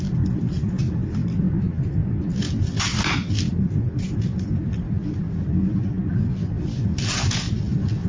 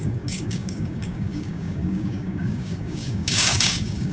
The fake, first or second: second